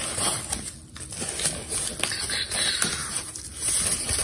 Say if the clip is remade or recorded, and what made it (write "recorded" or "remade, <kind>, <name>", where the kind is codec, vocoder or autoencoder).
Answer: recorded